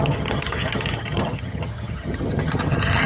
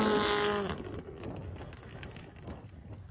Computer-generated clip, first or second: first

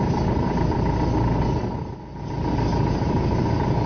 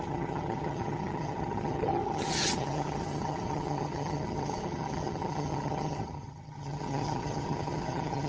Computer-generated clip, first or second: second